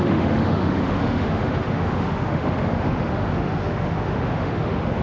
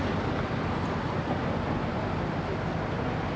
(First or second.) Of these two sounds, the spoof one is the first